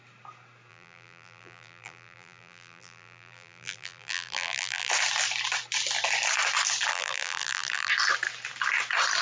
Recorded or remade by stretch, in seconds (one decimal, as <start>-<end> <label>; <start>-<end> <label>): 0.0-0.7 recorded; 0.7-4.9 remade; 4.9-6.9 recorded; 6.9-7.9 remade; 7.9-9.2 recorded